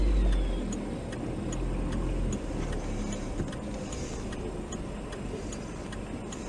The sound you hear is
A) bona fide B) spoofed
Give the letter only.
A